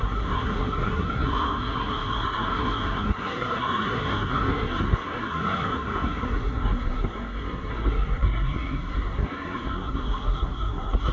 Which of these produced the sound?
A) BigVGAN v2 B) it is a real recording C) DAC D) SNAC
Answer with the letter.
D